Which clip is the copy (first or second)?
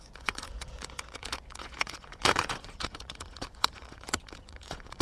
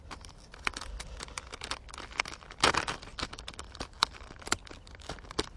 first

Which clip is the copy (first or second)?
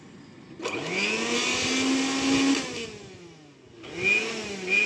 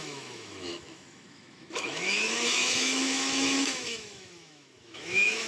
second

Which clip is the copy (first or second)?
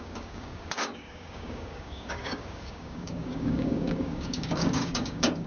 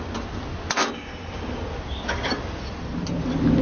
first